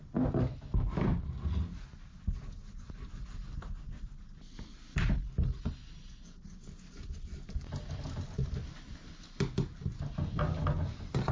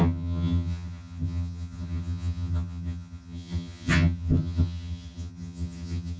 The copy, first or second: second